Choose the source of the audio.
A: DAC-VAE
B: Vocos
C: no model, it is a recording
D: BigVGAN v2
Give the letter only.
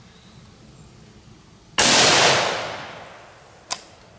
C